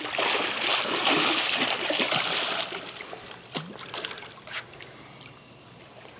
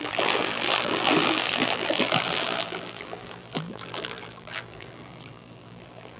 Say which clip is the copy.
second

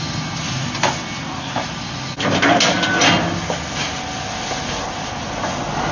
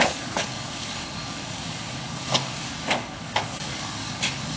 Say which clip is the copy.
second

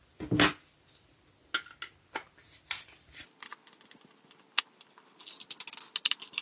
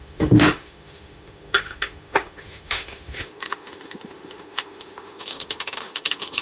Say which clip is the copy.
second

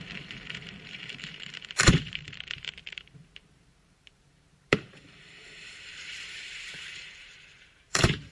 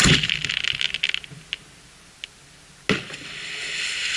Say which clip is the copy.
first